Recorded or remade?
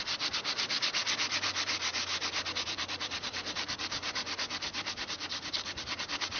remade